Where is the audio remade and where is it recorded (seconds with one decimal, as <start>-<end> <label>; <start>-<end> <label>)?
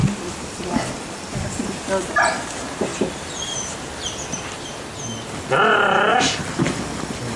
0.0-6.1 recorded; 6.1-6.7 remade; 6.7-7.4 recorded